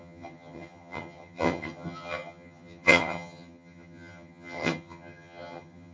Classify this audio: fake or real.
fake